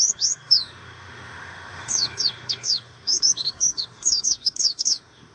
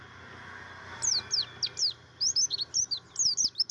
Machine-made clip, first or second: first